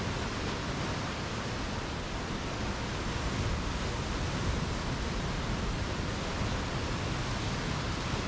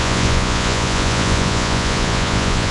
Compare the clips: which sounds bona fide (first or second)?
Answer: first